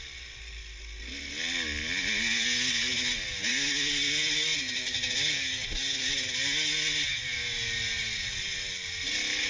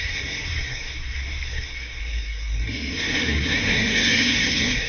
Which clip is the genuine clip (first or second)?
first